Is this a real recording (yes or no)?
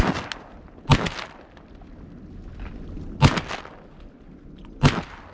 yes